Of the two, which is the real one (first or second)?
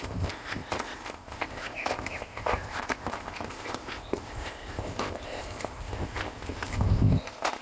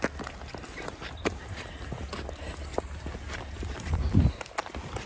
second